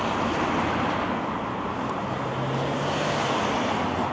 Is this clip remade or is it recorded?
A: recorded